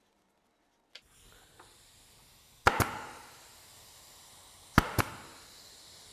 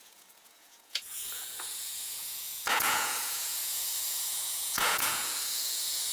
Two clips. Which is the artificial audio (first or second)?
second